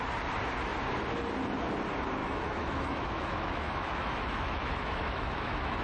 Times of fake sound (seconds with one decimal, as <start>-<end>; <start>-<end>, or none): 2.2-5.8